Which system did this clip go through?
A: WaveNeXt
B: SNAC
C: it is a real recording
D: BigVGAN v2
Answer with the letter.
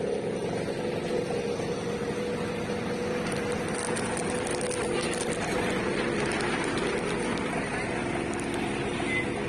C